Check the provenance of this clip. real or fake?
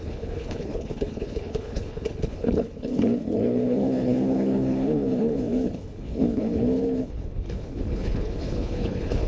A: fake